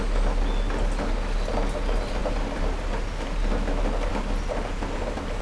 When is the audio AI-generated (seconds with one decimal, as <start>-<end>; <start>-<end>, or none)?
none